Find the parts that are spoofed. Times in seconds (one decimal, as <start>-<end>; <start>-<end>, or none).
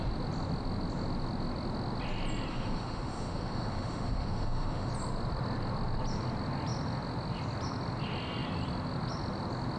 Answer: 2.5-4.9